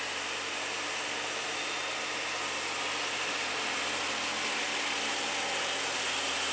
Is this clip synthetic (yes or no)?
no